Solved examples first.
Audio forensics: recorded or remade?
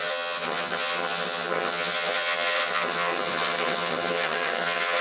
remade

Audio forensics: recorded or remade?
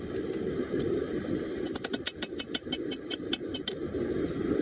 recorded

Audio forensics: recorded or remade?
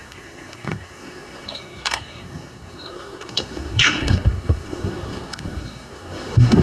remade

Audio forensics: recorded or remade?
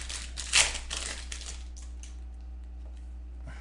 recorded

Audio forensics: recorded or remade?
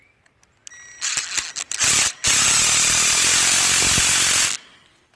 recorded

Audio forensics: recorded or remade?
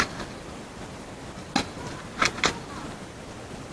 recorded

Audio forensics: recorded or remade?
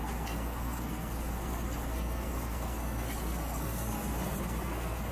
remade